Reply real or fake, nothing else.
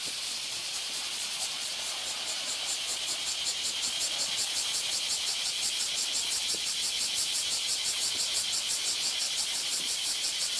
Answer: fake